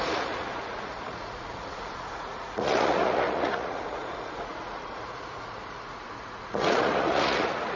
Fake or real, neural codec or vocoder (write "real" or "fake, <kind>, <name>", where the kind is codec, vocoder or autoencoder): fake, vocoder, Vocos